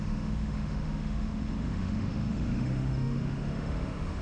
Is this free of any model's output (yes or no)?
no